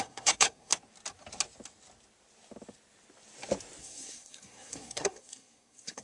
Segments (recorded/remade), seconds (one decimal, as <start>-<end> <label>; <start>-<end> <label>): 0.0-0.7 remade; 0.7-3.8 recorded; 3.8-6.0 remade